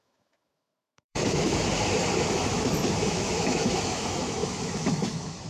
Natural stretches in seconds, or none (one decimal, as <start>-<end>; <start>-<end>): 1.6-2.3